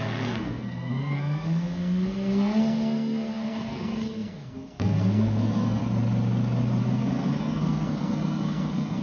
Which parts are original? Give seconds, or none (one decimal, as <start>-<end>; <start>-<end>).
5.8-6.8